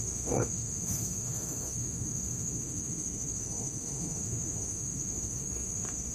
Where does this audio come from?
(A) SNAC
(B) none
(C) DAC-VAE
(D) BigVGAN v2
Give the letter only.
C